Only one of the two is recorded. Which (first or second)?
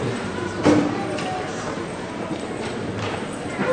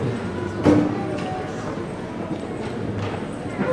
second